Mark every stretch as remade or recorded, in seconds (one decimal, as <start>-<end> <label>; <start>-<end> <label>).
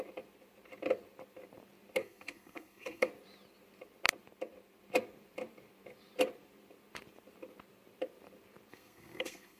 0.0-2.0 recorded; 2.0-3.1 remade; 3.1-8.7 recorded; 8.7-9.6 remade